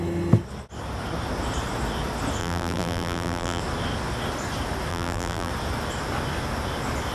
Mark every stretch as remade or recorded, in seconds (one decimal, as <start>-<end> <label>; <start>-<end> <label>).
0.0-2.4 recorded; 2.4-3.6 remade; 3.6-4.9 recorded; 4.9-5.5 remade; 5.5-7.1 recorded